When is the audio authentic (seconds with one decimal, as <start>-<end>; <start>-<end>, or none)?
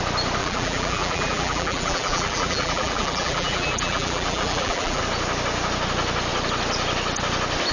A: 0.0-0.4; 5.0-7.7